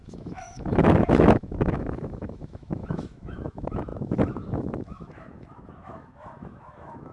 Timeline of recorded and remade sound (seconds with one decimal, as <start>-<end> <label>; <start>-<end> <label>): 0.0-7.1 remade